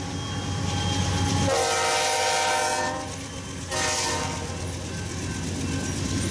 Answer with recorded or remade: recorded